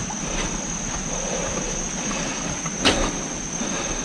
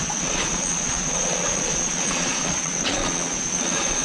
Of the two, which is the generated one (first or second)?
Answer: second